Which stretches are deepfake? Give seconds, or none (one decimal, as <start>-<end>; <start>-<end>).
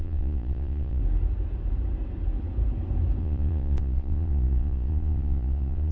0.0-1.0; 3.2-5.9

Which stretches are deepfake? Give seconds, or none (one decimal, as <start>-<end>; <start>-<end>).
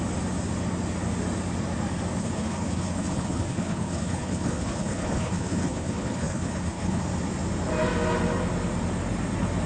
2.2-7.0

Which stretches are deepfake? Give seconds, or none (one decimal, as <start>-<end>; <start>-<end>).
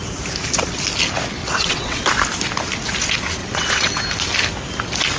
1.4-2.0; 3.4-4.0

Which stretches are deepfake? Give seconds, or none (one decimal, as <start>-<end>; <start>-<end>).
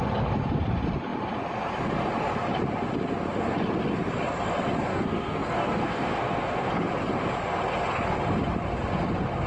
4.9-6.7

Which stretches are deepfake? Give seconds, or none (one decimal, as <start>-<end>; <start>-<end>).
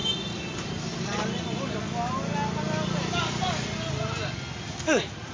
none